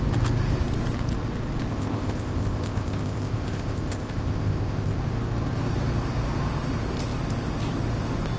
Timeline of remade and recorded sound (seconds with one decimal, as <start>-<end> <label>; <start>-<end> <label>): 0.0-1.7 recorded; 1.7-5.0 remade; 5.0-8.4 recorded